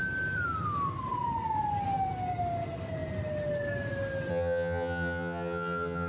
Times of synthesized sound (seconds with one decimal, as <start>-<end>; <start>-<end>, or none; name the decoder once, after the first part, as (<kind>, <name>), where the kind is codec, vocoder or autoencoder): 4.3-6.1 (vocoder, HiFi-GAN)